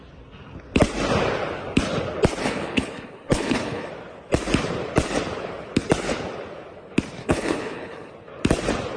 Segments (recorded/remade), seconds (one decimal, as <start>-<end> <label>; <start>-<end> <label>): 0.0-2.4 recorded; 2.4-3.9 remade; 3.9-7.2 recorded; 7.2-8.1 remade; 8.1-9.0 recorded